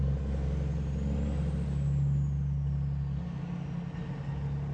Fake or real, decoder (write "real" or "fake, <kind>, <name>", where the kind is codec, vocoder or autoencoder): real